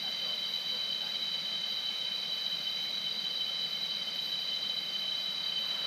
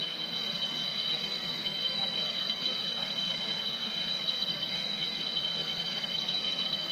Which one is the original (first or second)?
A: first